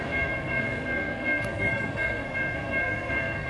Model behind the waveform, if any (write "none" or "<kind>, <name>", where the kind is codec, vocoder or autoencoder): codec, SNAC